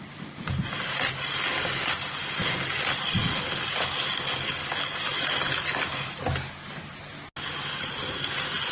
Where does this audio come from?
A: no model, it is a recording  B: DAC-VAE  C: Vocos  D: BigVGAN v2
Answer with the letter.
A